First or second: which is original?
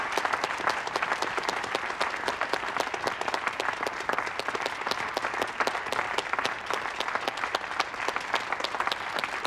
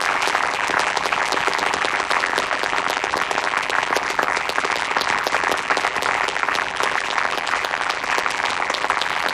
first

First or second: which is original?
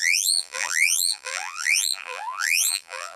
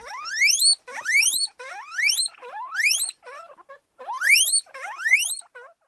second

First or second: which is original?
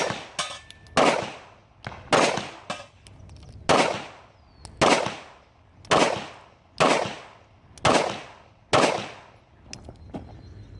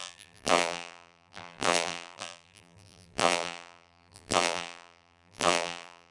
first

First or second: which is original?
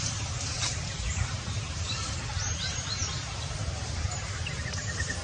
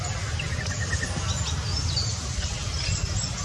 second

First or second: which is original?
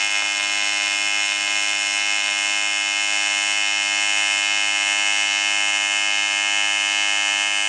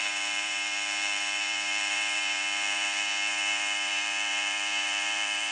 first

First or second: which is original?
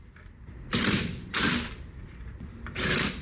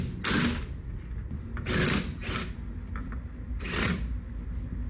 second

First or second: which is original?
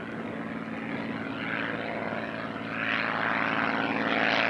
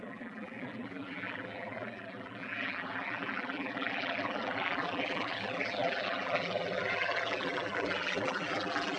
first